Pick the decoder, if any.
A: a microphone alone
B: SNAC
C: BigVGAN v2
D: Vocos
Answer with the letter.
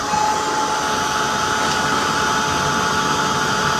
A